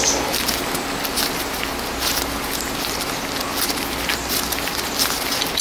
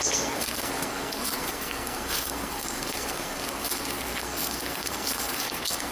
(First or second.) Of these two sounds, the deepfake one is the second